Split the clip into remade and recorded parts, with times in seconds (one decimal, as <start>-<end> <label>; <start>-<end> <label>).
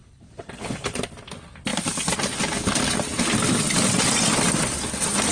0.0-1.0 remade; 1.0-5.3 recorded